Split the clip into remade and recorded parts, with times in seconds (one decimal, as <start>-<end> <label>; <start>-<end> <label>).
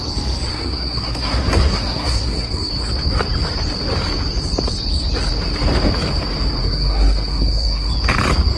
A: 0.0-0.5 recorded; 0.5-2.7 remade; 2.7-6.6 recorded; 6.6-7.9 remade; 7.9-8.6 recorded